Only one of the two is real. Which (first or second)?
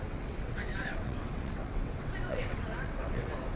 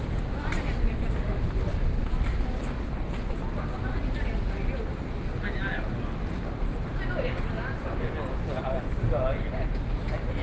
second